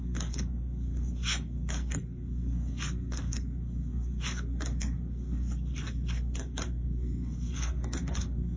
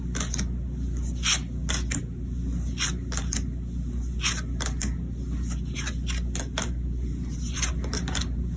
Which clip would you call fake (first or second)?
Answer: first